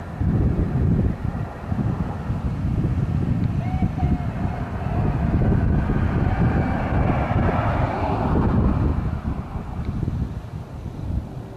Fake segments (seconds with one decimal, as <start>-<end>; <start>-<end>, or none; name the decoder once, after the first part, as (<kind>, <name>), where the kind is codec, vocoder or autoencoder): none